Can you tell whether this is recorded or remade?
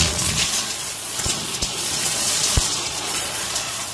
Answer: remade